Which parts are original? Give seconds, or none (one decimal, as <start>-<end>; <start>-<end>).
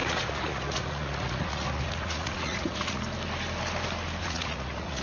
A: 3.0-4.2